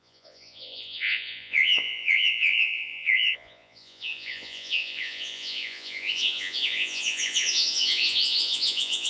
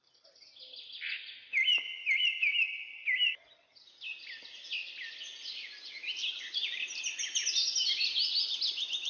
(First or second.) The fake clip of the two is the first